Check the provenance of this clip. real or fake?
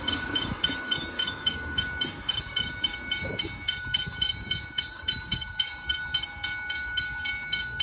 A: fake